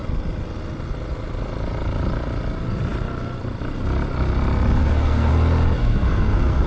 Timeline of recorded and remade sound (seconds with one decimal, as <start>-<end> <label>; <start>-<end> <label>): 0.0-4.8 recorded; 4.8-5.3 remade; 5.3-5.8 recorded; 5.8-6.7 remade

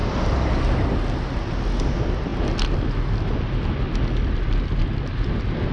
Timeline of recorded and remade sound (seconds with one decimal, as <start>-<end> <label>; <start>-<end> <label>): 0.0-5.7 recorded

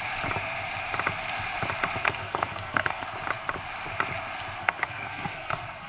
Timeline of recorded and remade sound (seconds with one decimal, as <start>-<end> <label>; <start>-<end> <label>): 0.0-2.0 recorded; 2.0-3.0 remade; 3.0-4.6 recorded; 4.6-5.9 remade